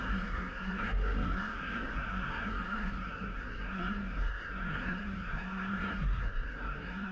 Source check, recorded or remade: remade